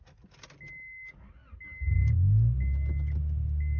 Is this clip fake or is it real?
real